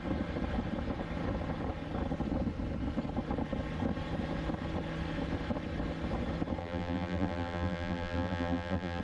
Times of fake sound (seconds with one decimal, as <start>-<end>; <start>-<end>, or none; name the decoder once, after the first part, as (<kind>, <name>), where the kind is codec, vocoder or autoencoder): 6.6-9.0 (vocoder, BigVGAN v2)